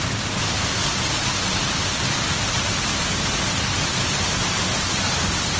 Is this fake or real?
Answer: real